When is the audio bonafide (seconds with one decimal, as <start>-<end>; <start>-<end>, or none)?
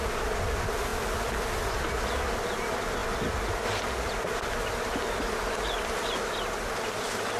0.0-7.4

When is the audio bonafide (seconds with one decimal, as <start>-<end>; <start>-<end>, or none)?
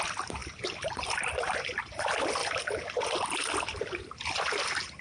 2.4-4.4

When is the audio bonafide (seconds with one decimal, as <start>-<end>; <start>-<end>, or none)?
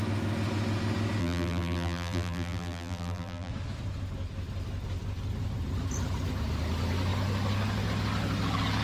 0.0-1.2; 3.5-8.8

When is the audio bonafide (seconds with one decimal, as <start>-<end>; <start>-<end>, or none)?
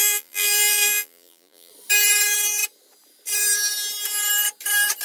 1.7-5.0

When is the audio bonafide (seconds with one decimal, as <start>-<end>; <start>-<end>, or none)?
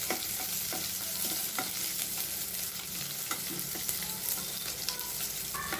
0.0-5.8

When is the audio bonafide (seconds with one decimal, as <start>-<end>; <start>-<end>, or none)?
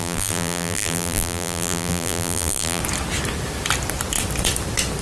2.8-5.0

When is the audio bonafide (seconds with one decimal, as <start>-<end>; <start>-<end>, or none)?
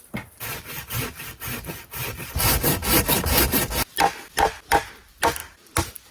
0.0-6.1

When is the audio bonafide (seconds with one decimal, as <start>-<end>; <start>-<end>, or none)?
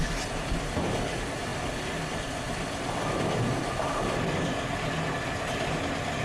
0.0-6.2